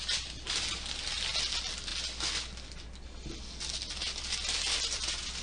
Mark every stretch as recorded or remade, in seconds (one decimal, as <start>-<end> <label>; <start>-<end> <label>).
0.0-5.4 recorded